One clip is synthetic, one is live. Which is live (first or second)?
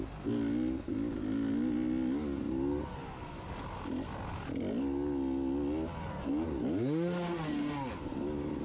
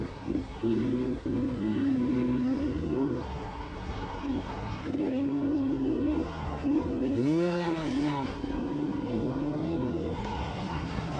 first